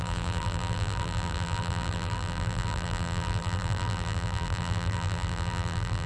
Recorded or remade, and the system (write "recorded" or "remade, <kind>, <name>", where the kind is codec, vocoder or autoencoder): remade, vocoder, BigVGAN v2